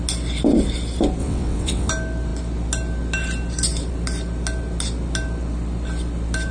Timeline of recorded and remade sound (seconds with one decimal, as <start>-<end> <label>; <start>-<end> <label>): 0.0-1.2 recorded; 1.2-1.9 remade; 1.9-6.5 recorded